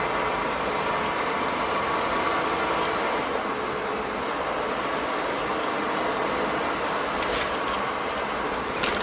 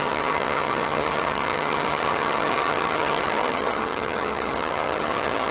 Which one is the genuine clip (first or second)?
first